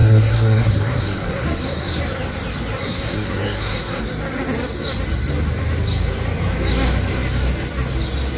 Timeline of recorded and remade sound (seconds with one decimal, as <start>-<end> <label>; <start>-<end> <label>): 0.0-2.0 remade; 2.0-2.8 recorded; 2.8-4.0 remade; 4.0-8.4 recorded